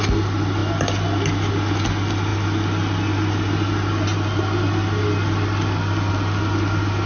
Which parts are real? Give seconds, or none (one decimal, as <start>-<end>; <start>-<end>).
0.0-7.1